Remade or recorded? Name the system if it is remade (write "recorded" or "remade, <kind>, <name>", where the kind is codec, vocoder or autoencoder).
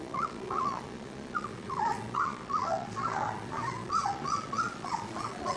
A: remade, vocoder, Vocos